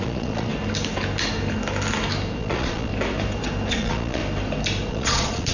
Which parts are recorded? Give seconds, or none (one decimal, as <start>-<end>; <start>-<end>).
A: 0.5-2.4; 2.9-3.7; 4.2-4.9